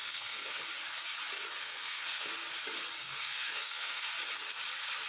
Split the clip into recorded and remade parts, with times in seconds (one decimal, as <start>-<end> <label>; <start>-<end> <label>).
0.0-0.6 remade; 0.6-1.6 recorded; 1.6-2.3 remade; 2.3-3.0 recorded; 3.0-4.1 remade; 4.1-5.1 recorded